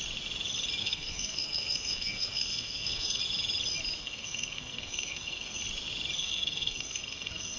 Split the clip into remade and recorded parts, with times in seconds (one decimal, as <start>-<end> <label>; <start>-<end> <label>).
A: 0.0-0.8 recorded; 0.8-3.2 remade; 3.2-4.0 recorded; 4.0-5.6 remade; 5.6-6.2 recorded; 6.2-7.6 remade